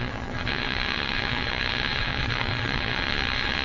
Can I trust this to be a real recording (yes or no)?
no